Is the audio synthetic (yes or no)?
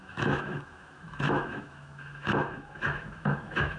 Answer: yes